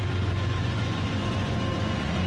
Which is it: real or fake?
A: fake